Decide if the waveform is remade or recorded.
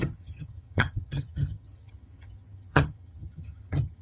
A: remade